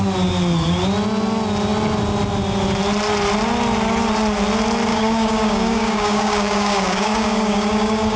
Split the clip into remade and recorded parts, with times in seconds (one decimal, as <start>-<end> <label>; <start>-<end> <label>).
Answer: 0.0-4.9 recorded; 4.9-8.2 remade